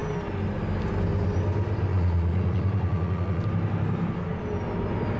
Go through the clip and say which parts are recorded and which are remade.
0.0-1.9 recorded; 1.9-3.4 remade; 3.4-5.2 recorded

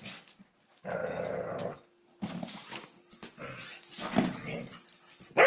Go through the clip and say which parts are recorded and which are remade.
0.0-5.5 recorded